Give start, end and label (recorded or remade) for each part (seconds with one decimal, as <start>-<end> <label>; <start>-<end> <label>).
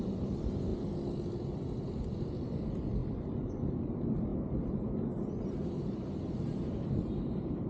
0.0-0.7 remade; 0.7-2.0 recorded; 2.0-3.0 remade; 3.0-3.8 recorded; 3.8-7.7 remade